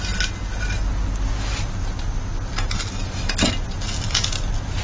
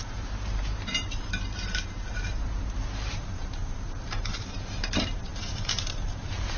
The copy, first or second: second